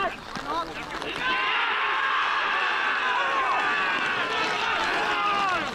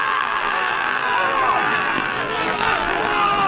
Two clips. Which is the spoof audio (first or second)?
second